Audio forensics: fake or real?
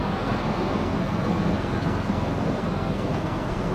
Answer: fake